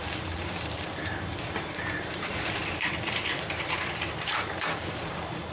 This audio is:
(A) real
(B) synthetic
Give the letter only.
B